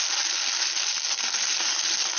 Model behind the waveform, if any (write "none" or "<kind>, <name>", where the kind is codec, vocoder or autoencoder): none